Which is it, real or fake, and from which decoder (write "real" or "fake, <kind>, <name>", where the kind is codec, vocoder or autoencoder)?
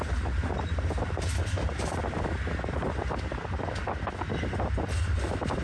real